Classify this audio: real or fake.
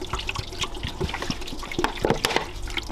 real